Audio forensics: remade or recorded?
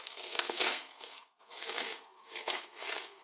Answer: remade